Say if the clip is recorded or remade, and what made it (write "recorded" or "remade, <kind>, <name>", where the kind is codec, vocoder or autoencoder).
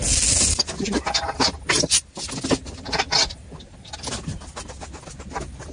recorded